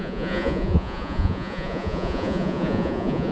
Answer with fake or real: fake